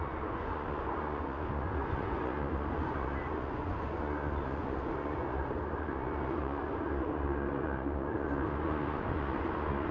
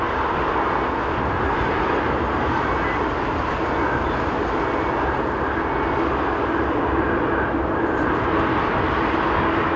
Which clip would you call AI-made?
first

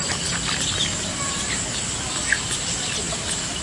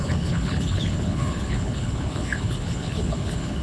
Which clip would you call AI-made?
second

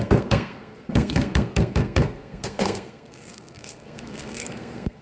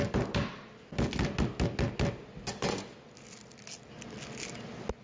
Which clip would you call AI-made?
first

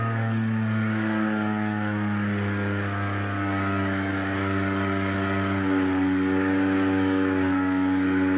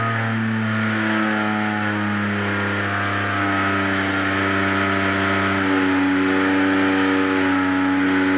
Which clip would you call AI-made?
first